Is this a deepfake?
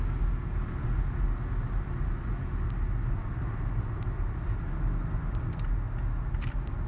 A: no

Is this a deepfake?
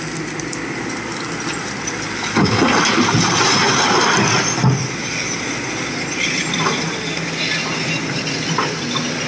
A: no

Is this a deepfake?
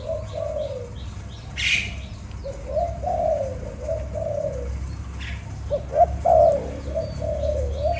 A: no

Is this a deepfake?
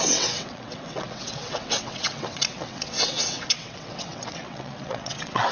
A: yes